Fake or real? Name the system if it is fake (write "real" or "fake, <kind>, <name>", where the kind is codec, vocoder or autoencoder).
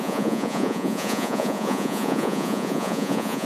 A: fake, vocoder, Vocos